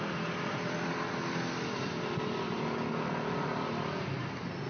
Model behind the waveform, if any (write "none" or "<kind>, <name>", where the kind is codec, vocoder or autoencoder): none